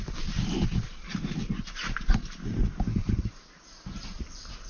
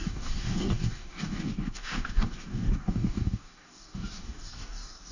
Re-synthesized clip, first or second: second